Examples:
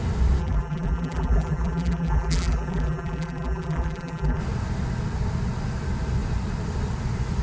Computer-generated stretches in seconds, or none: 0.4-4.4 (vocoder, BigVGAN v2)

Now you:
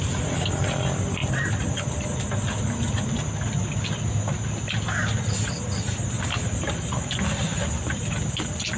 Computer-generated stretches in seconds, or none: none

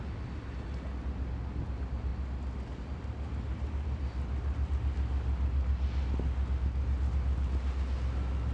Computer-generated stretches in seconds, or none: none